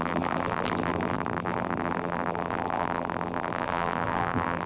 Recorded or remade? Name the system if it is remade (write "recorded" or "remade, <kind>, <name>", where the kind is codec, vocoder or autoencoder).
remade, vocoder, BigVGAN v2